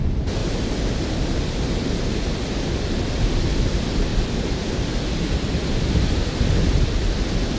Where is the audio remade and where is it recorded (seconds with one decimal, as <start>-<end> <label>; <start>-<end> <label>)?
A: 0.0-4.1 recorded; 4.1-4.7 remade; 4.7-7.6 recorded